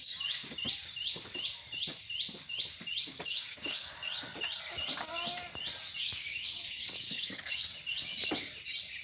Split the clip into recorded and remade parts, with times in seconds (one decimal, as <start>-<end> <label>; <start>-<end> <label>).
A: 0.0-3.1 recorded; 3.1-4.2 remade; 4.2-6.0 recorded; 6.0-7.5 remade; 7.5-9.0 recorded